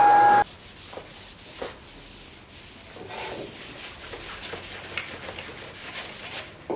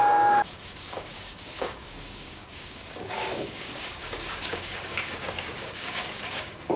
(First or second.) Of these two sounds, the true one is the first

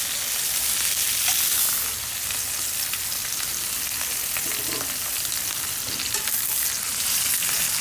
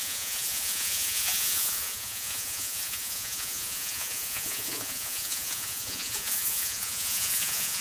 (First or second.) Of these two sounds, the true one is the first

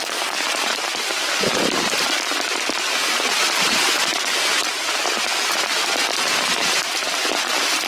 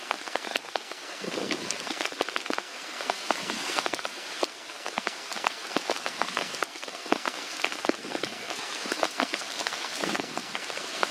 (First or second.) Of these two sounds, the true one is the first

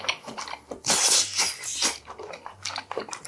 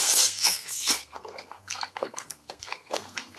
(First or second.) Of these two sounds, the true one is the first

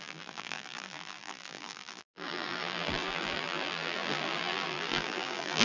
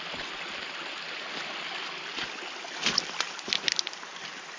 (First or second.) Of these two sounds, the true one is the second